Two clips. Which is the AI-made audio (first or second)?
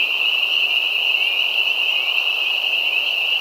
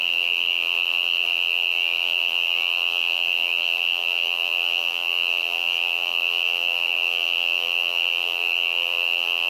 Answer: second